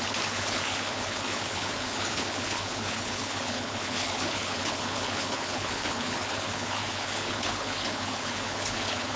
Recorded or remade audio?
remade